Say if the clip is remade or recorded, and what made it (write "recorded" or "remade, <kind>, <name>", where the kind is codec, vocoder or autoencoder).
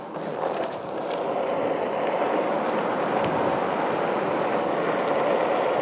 recorded